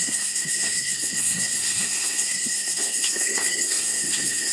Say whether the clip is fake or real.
fake